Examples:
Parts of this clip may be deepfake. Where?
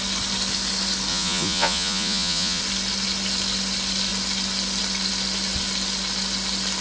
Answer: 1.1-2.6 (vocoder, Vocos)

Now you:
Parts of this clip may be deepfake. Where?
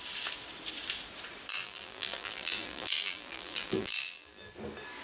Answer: 1.5-4.5 (vocoder, BigVGAN v2)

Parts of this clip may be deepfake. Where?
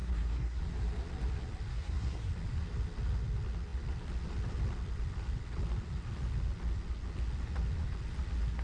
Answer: 0.0-0.6 (codec, SNAC); 1.7-2.3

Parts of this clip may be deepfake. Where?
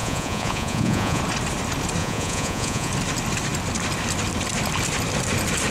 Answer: 0.0-1.2 (vocoder, Vocos); 2.0-2.9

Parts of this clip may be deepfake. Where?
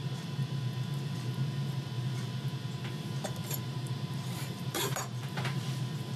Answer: 3.4-5.8 (vocoder, BigVGAN v2)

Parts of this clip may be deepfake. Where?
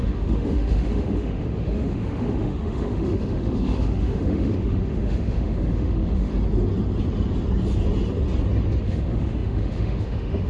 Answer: 0.0-6.3 (autoencoder, DAC-VAE); 8.8-10.5